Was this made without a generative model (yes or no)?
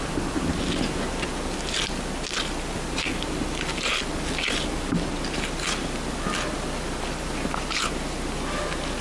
yes